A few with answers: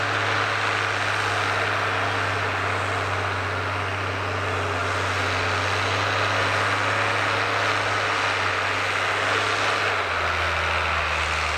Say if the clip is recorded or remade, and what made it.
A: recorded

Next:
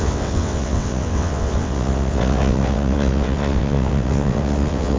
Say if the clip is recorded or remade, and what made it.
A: remade, vocoder, WaveNeXt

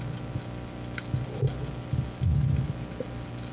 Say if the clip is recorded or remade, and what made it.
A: recorded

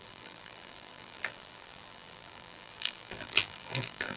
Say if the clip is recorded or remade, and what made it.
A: remade, vocoder, BigVGAN v2